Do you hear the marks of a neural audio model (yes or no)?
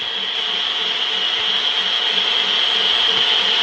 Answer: no